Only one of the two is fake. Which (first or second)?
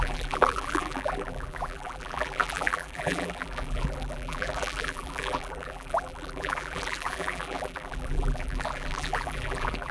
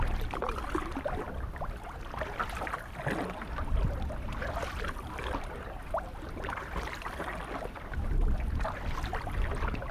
first